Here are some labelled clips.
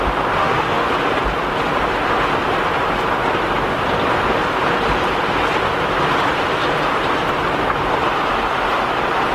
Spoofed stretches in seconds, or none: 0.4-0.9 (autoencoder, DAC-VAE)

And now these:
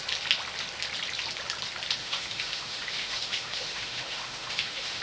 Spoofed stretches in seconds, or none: 2.0-5.0 (autoencoder, DAC-VAE)